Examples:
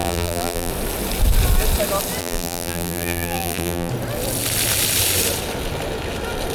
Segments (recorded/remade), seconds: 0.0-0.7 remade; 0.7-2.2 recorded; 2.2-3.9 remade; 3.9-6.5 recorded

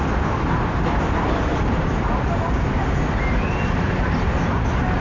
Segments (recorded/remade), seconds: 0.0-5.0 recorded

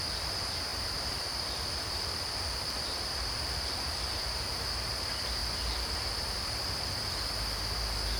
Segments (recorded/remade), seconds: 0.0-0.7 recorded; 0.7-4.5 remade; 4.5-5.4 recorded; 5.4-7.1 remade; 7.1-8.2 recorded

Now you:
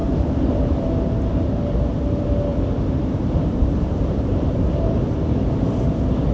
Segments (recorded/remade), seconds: 0.0-0.8 remade; 0.8-2.5 recorded; 2.5-4.9 remade; 4.9-6.3 recorded

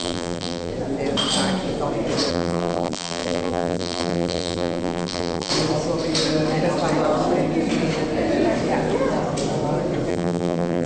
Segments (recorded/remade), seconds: 0.0-0.7 remade; 0.7-2.3 recorded; 2.3-5.5 remade; 5.5-10.1 recorded; 10.1-10.9 remade

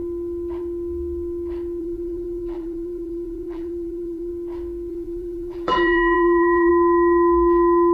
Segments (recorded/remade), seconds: 0.0-1.8 recorded; 1.8-4.3 remade; 4.3-4.9 recorded; 4.9-6.7 remade; 6.7-7.9 recorded

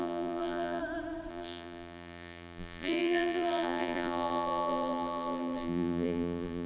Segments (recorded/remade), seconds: 0.0-0.8 remade; 0.8-1.3 recorded; 1.3-6.7 remade

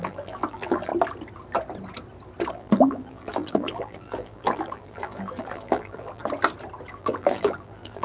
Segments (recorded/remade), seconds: 0.0-0.9 remade; 0.9-2.5 recorded; 2.5-6.2 remade; 6.2-6.9 recorded; 6.9-8.0 remade